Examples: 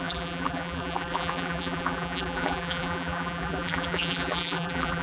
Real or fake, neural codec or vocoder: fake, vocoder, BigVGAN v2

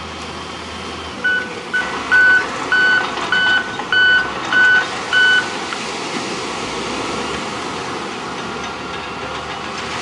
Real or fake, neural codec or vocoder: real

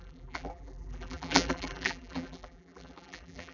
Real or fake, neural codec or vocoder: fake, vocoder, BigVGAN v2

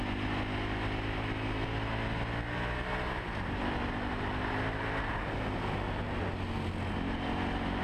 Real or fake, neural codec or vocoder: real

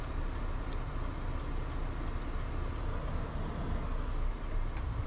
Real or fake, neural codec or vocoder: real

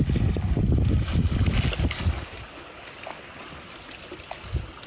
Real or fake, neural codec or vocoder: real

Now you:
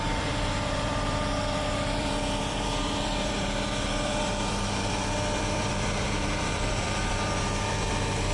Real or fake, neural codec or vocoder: fake, vocoder, BigVGAN v2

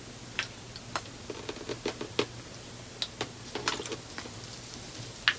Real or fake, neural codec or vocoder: real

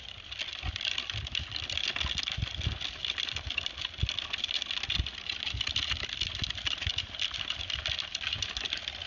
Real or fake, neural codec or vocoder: real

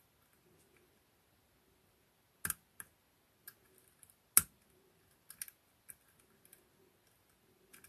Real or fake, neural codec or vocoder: real